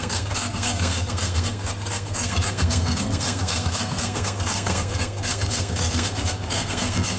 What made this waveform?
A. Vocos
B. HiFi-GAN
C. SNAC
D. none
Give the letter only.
C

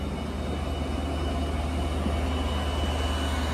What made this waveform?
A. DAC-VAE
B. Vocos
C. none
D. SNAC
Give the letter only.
C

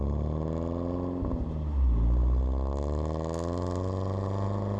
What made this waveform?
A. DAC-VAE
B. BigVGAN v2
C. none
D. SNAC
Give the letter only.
C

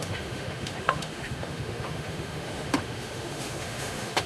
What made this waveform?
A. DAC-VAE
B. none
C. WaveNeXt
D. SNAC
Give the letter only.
A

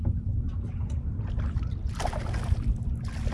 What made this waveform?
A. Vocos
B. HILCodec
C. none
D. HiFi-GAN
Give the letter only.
C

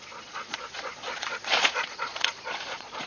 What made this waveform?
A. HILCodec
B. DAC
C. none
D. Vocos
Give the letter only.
D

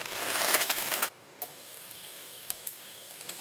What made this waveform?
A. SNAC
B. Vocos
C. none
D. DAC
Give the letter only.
D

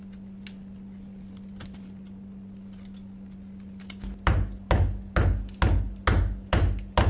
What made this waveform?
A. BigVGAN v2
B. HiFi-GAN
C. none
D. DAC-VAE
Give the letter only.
C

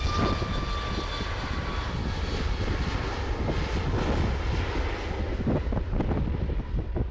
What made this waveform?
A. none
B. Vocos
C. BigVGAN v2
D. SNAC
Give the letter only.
A